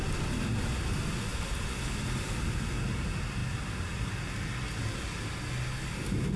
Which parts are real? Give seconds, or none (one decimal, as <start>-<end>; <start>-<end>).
0.0-3.4; 3.9-6.4